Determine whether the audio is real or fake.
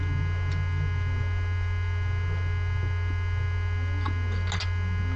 real